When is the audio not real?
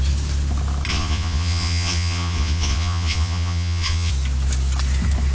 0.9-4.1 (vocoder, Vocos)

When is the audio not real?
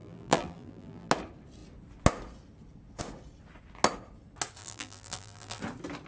0.0-1.1 (vocoder, BigVGAN v2); 4.6-5.6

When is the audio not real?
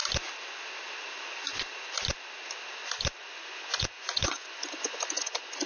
3.2-5.7 (vocoder, Vocos)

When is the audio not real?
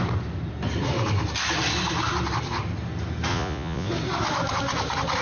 3.3-3.9 (vocoder, Vocos)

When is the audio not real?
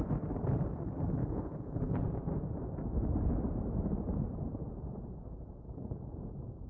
1.2-2.4 (vocoder, Vocos); 4.5-6.7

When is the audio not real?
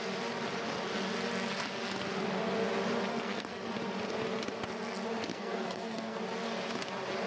3.1-3.7 (codec, SNAC); 5.3-6.2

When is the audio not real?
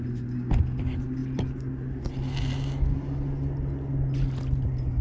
none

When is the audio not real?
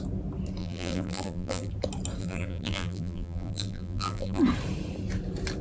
0.6-1.7 (vocoder, BigVGAN v2); 2.2-4.4